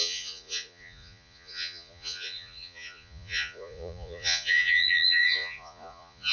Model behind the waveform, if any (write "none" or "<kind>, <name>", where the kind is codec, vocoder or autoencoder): vocoder, Vocos